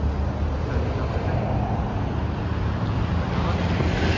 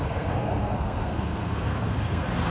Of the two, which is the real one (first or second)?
first